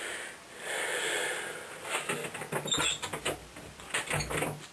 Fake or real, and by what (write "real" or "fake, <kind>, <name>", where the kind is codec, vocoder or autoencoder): real